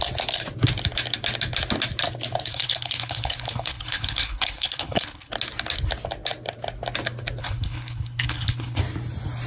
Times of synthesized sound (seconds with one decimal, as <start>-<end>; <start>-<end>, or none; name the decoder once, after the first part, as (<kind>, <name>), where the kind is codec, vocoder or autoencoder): 2.5-5.3 (codec, HILCodec); 7.4-8.8